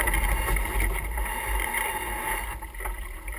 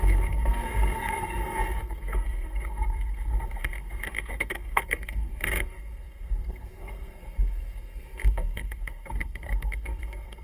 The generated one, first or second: second